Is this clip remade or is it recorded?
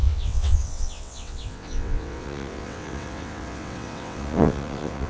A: remade